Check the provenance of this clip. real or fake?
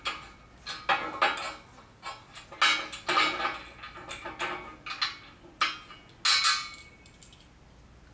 real